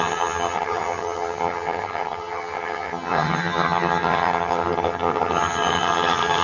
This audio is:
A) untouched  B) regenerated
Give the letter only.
B